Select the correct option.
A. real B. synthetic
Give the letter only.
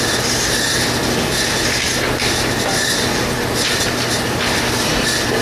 A